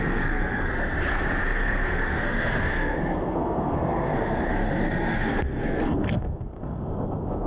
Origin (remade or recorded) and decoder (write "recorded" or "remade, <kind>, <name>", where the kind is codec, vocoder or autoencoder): remade, codec, SNAC